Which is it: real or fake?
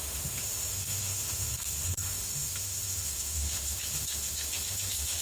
fake